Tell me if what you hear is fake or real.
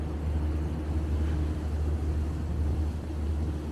real